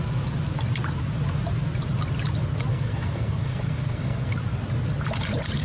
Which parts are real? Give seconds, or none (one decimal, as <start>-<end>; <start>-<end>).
0.0-2.7; 4.3-5.6